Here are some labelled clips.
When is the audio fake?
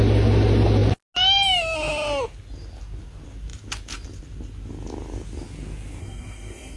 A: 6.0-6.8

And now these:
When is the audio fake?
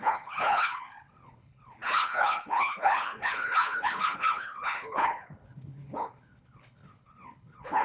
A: 0.0-7.8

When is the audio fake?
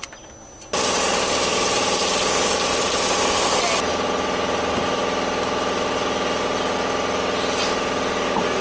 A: none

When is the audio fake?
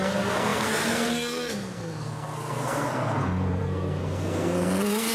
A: 0.0-5.1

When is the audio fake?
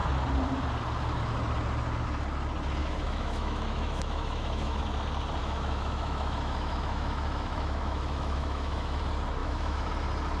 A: 2.8-4.8; 5.4-9.0; 9.4-9.9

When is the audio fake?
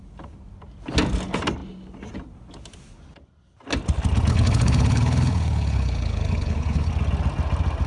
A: 4.3-6.9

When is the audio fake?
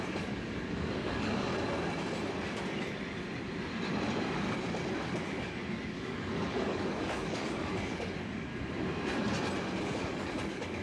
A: 0.0-1.5; 5.1-8.5; 9.8-10.8